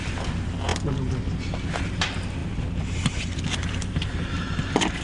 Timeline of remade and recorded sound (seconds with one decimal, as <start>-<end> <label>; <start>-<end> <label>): 0.0-5.0 recorded

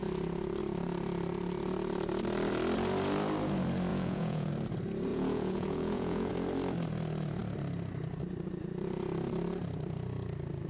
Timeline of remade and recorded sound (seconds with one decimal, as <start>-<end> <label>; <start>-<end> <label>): 0.0-3.9 recorded; 3.9-4.5 remade; 4.5-5.1 recorded; 5.1-6.3 remade; 6.3-10.7 recorded

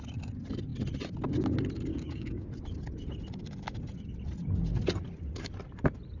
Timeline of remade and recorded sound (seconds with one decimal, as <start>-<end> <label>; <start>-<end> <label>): 0.0-1.9 recorded; 1.9-2.5 remade; 2.5-6.2 recorded

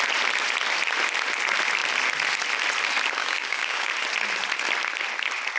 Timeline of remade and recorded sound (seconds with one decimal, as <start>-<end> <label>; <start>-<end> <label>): 0.0-3.2 recorded; 3.2-3.9 remade; 3.9-5.6 recorded

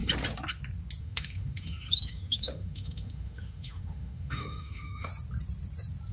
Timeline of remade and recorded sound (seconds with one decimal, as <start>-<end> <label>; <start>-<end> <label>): 0.0-1.0 recorded; 1.0-5.1 remade; 5.1-6.1 recorded